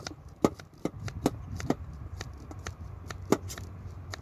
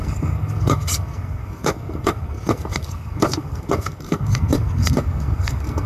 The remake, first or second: second